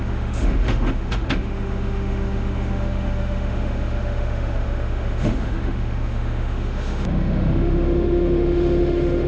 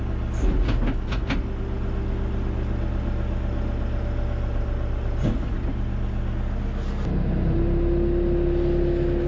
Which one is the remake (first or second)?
first